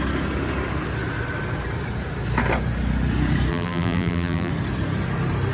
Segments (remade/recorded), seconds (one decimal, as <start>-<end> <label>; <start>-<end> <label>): 0.0-3.5 recorded; 3.5-4.5 remade; 4.5-5.5 recorded